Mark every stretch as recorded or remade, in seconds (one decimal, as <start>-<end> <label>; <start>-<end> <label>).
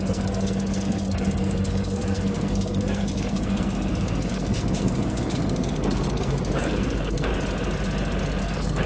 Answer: 0.0-7.3 remade; 7.3-8.4 recorded; 8.4-8.9 remade